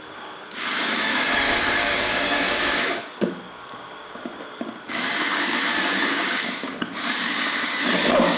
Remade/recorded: remade